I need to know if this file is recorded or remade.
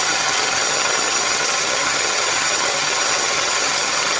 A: remade